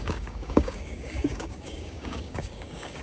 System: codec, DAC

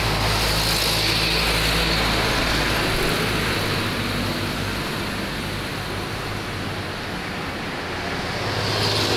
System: none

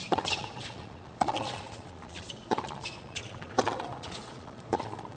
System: vocoder, Vocos